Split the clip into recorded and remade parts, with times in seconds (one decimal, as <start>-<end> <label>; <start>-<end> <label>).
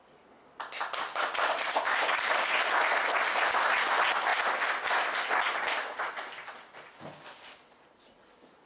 0.0-8.7 recorded